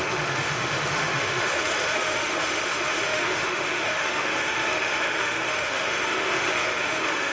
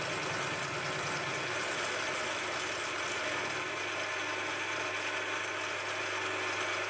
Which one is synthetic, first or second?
first